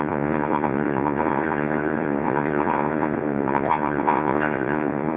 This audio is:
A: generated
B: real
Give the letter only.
A